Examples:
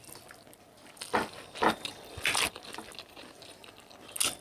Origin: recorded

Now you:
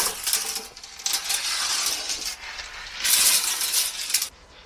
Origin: recorded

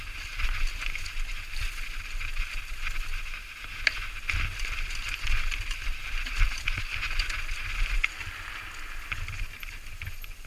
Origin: recorded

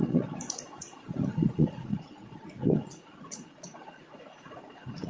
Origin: remade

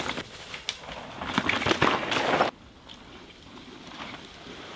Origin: recorded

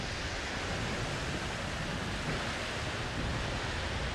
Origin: recorded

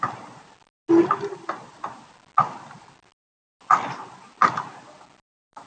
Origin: recorded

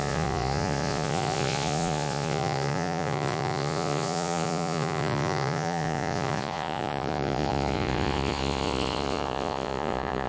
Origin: remade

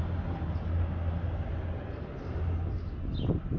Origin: recorded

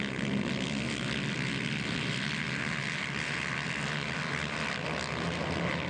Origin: recorded